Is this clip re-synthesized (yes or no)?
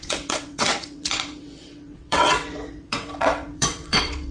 yes